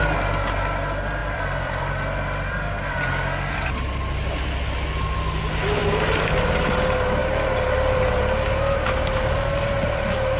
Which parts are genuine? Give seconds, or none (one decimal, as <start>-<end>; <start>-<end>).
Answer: 0.0-1.2; 3.7-10.4

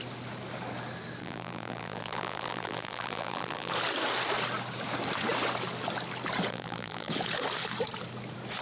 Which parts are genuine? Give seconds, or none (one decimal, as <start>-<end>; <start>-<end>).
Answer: 0.0-1.2; 3.7-6.5; 7.1-8.6